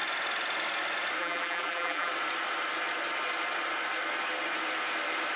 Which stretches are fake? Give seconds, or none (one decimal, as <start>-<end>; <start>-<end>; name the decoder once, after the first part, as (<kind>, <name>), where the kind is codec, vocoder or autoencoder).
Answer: 1.2-2.1 (vocoder, BigVGAN v2)